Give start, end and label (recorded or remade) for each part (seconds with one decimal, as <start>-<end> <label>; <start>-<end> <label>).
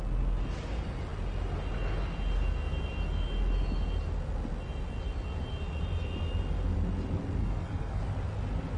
0.0-7.4 recorded; 7.4-8.0 remade; 8.0-8.8 recorded